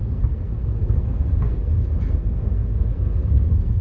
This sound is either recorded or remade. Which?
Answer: remade